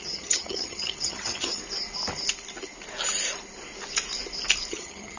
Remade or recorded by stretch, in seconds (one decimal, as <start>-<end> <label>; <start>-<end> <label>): 0.0-1.6 remade; 1.6-4.7 recorded; 4.7-5.2 remade